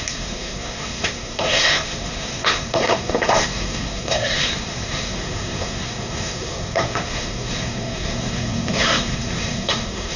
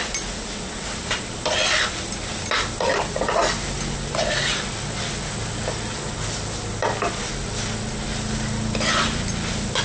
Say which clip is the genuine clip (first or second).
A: second